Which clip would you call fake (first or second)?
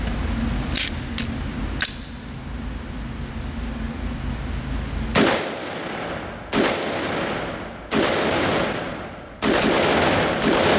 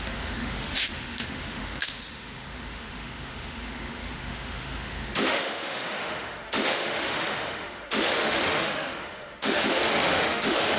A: second